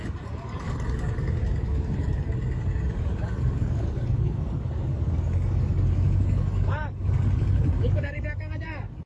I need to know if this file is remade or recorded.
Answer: remade